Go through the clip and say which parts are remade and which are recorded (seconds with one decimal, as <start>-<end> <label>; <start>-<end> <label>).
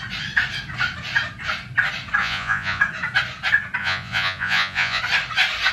0.0-2.2 recorded; 2.2-2.8 remade; 2.8-3.8 recorded; 3.8-5.0 remade; 5.0-5.7 recorded